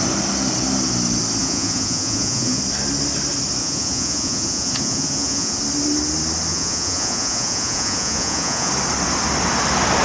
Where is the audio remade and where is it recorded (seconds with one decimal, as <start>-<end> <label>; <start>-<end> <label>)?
0.0-1.4 recorded; 1.4-2.6 remade; 2.6-3.6 recorded; 3.6-5.6 remade; 5.6-6.5 recorded; 6.5-8.7 remade; 8.7-10.0 recorded